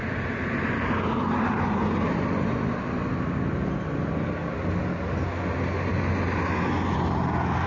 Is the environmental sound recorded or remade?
recorded